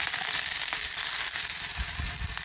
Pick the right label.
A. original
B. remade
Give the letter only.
A